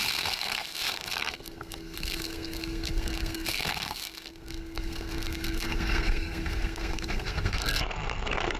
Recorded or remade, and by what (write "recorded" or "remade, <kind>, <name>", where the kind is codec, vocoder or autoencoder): remade, codec, SNAC